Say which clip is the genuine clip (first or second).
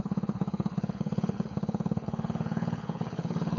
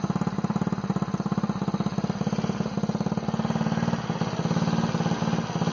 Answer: second